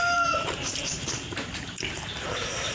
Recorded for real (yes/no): no